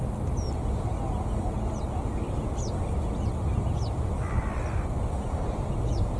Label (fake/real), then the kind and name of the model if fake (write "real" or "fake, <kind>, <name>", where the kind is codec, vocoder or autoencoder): real